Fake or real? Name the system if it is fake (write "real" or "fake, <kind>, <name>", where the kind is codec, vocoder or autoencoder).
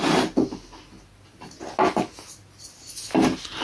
real